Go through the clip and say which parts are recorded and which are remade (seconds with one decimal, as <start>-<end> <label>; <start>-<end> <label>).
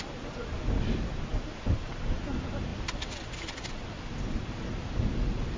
0.0-2.7 recorded; 2.7-3.7 remade; 3.7-5.6 recorded